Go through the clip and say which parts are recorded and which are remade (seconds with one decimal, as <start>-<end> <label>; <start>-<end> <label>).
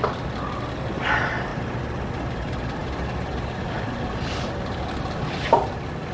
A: 0.0-1.5 recorded; 1.5-2.1 remade; 2.1-2.8 recorded; 2.8-6.1 remade